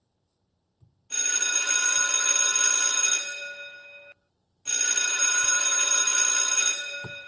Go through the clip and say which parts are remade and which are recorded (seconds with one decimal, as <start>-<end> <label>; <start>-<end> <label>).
0.0-0.7 remade; 0.7-5.1 recorded; 5.1-6.1 remade; 6.1-6.8 recorded; 6.8-7.3 remade